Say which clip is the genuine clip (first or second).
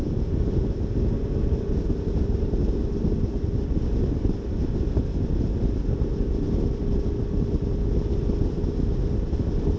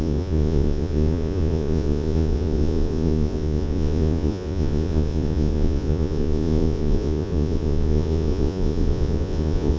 first